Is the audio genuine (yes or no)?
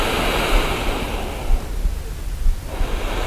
yes